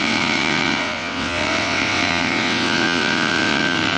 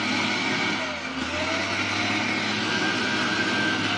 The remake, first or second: first